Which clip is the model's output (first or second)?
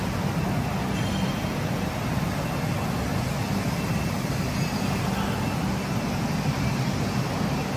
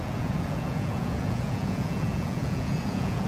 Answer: second